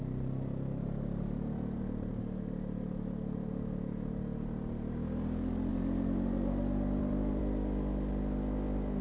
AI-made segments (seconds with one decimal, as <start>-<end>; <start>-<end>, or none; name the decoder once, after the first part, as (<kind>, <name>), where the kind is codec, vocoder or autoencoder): 5.7-7.4 (vocoder, BigVGAN v2)